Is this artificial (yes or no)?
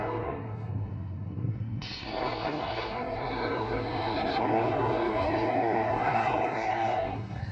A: yes